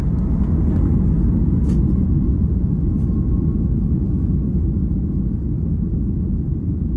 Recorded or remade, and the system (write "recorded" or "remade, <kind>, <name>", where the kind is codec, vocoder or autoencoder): recorded